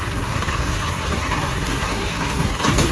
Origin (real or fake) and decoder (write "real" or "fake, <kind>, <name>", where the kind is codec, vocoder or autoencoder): fake, codec, SNAC